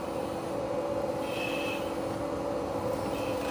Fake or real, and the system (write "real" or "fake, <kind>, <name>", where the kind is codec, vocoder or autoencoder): real